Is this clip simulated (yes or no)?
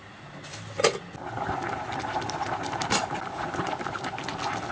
no